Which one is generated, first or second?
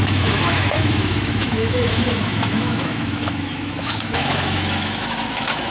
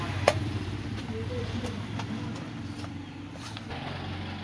first